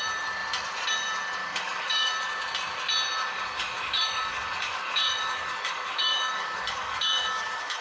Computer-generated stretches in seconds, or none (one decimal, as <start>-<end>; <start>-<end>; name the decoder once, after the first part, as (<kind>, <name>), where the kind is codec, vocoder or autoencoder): 1.4-2.1 (codec, DAC); 3.2-7.8